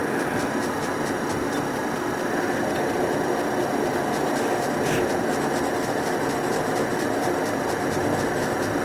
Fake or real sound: real